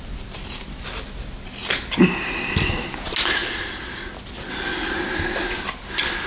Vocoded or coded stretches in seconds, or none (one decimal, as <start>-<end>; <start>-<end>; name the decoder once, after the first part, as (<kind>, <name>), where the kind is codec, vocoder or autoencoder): none